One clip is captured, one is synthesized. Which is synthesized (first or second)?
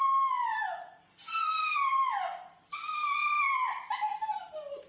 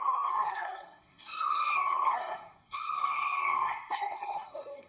second